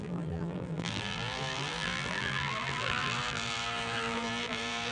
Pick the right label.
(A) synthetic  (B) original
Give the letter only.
A